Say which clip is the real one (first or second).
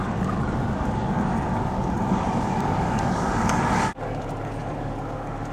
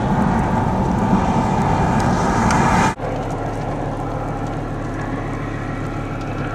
second